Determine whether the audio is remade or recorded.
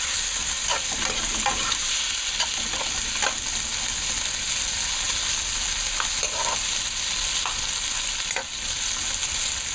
recorded